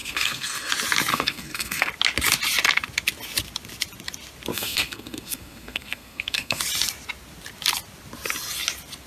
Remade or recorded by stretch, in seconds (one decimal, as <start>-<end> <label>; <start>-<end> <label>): 0.0-0.7 remade; 0.7-1.1 recorded; 1.1-1.9 remade; 1.9-4.5 recorded; 4.5-6.6 remade; 6.6-9.1 recorded